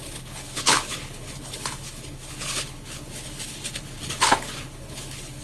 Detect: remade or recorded remade